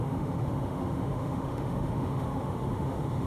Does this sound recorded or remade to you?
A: remade